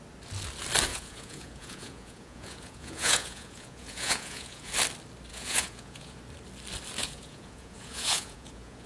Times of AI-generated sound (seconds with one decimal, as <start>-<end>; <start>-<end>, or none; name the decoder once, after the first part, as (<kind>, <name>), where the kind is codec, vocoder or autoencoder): 0.9-4.7 (vocoder, Vocos); 5.3-6.2; 7.0-8.9

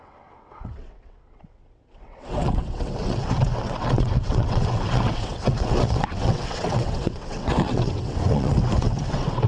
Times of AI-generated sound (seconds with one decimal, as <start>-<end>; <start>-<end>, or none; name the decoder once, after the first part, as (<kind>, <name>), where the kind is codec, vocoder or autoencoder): 0.0-9.5 (vocoder, WaveNeXt)

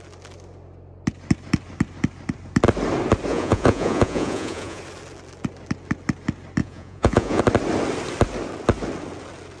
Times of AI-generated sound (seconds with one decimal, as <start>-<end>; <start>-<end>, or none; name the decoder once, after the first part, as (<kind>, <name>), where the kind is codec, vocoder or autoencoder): 3.3-4.8 (vocoder, Vocos); 6.6-7.4